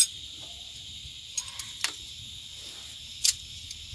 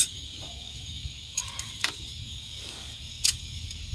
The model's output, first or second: second